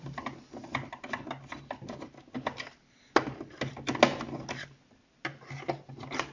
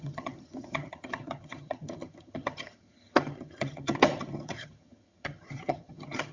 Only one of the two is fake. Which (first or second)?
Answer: second